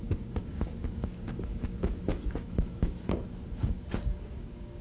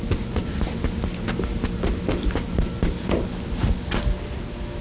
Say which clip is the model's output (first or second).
first